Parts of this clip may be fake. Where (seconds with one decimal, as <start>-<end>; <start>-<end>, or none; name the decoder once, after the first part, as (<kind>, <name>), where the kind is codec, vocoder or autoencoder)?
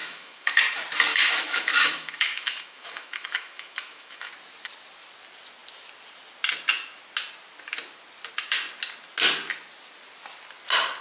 0.0-0.6 (autoencoder, DAC-VAE); 1.1-4.3